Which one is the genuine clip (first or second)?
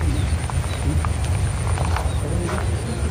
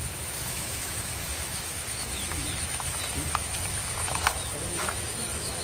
first